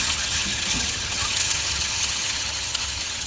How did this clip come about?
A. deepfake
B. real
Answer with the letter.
A